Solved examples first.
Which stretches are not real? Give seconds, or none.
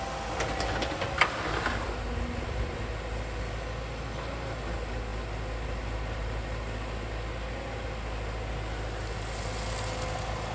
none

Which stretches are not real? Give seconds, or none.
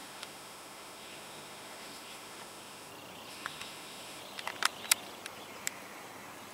0.0-2.9 (autoencoder, DAC-VAE); 3.3-4.2